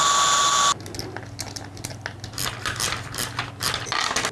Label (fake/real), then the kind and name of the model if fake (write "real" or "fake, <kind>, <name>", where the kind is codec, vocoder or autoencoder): real